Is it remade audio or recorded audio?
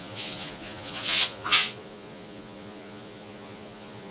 remade